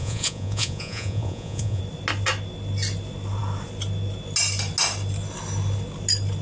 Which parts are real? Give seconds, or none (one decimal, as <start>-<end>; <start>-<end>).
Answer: 1.8-6.4